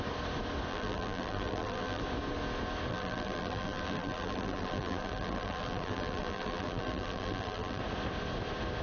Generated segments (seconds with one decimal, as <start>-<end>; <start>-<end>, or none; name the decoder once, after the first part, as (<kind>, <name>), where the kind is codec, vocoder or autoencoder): 0.7-2.0 (vocoder, BigVGAN v2); 2.9-7.8